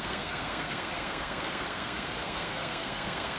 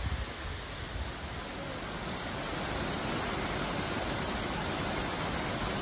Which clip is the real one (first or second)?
second